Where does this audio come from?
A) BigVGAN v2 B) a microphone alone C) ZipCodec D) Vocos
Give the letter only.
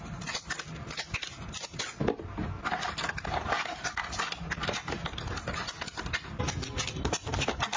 B